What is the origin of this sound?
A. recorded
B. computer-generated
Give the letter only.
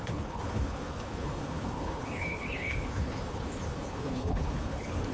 B